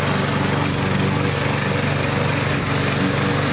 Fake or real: real